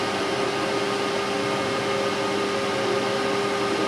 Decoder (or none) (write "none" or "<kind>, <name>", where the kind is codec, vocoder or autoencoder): none